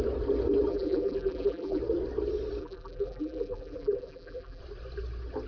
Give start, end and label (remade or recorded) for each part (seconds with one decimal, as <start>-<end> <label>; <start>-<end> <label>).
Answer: 0.0-0.7 recorded; 0.7-1.8 remade; 1.8-2.6 recorded; 2.6-4.6 remade; 4.6-5.5 recorded